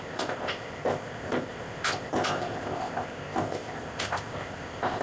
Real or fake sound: fake